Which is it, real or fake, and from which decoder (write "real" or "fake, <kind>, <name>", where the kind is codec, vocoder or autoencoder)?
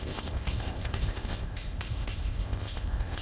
fake, codec, ZipCodec